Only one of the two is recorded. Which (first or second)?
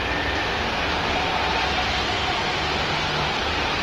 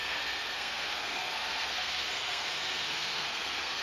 first